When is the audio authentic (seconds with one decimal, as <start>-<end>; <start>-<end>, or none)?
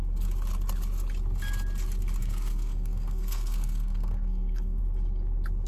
0.0-2.2; 4.8-5.7